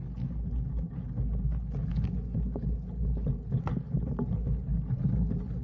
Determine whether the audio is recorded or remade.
recorded